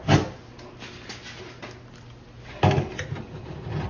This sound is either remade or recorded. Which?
recorded